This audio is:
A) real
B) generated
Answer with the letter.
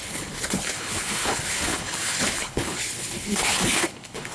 B